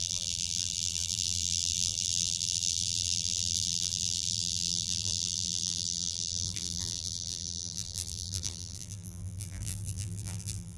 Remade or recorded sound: remade